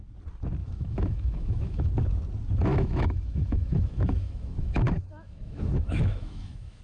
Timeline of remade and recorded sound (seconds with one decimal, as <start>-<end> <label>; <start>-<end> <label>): 0.0-0.6 recorded; 0.6-1.9 remade; 1.9-2.7 recorded; 2.7-6.8 remade